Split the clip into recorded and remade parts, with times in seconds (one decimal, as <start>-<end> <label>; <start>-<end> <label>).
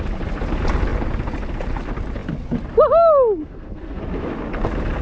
0.0-3.4 recorded; 3.4-4.0 remade; 4.0-5.0 recorded